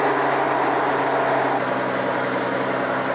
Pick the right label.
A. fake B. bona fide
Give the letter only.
B